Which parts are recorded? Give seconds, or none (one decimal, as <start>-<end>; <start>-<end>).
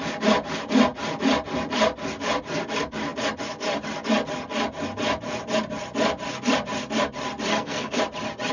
0.0-7.5; 8.0-8.5